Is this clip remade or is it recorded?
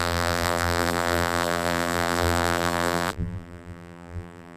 remade